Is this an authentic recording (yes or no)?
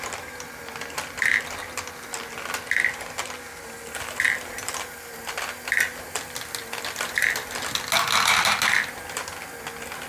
yes